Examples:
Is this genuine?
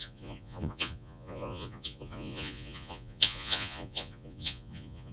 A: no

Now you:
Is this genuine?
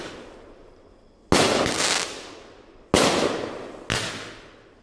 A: yes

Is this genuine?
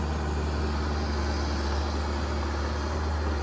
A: yes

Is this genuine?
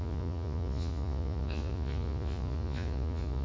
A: no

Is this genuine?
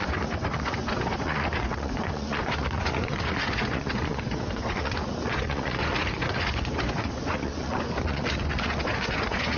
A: no